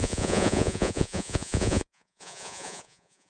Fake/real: fake